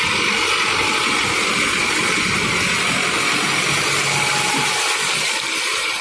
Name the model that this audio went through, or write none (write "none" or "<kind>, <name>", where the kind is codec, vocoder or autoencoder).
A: none